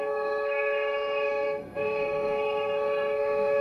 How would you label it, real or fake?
fake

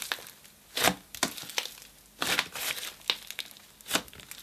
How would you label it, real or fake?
real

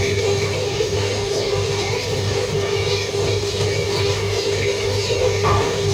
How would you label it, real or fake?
fake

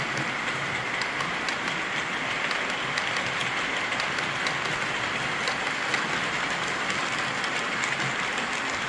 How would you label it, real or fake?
real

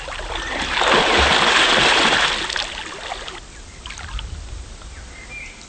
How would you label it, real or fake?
real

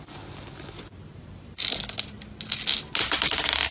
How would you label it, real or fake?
real